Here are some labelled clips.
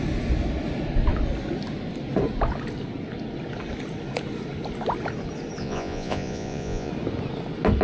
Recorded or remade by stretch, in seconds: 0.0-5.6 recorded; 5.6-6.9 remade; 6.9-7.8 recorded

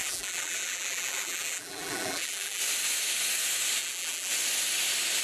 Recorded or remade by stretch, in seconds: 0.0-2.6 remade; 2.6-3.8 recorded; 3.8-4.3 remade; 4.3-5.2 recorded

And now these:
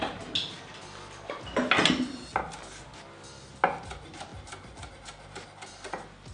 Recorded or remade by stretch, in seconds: 0.0-6.3 recorded

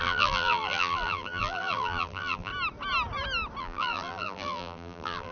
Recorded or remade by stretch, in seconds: 0.0-2.5 remade; 2.5-3.6 recorded; 3.6-5.3 remade

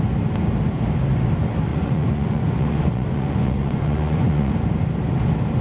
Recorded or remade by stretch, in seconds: 0.0-1.7 recorded; 1.7-4.5 remade; 4.5-5.6 recorded

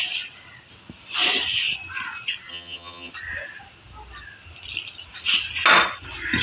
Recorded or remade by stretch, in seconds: 0.0-2.5 recorded; 2.5-3.1 remade; 3.1-6.4 recorded

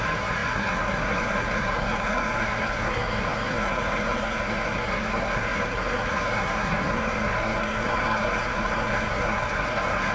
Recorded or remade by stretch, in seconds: 0.0-10.1 remade

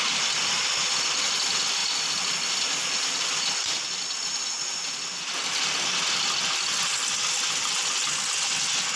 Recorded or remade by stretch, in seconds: 0.0-9.0 recorded